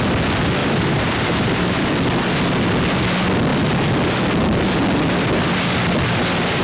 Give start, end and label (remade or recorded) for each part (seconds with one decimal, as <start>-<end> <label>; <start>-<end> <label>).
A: 0.0-0.6 recorded; 0.6-1.9 remade; 1.9-6.6 recorded

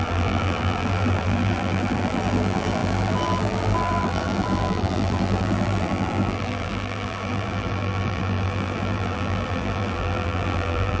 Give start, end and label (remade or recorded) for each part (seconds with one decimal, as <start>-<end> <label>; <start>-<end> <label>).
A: 0.0-11.0 remade

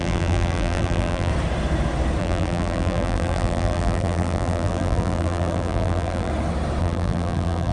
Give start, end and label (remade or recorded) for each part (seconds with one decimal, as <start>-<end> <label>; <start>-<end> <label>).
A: 0.0-1.3 remade; 1.3-2.2 recorded; 2.2-6.3 remade; 6.3-6.8 recorded; 6.8-7.7 remade

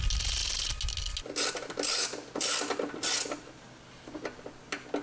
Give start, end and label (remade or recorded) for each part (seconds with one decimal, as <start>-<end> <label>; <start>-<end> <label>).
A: 0.0-5.0 recorded